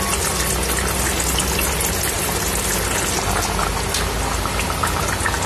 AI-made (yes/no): no